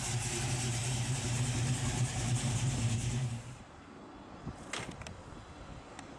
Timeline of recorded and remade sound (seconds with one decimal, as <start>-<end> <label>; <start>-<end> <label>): 0.0-0.8 recorded; 0.8-4.0 remade; 4.0-6.2 recorded